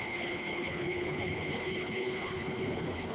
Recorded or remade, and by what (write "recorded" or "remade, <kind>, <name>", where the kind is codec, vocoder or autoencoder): remade, codec, HILCodec